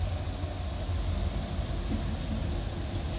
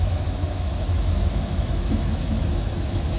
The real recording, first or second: first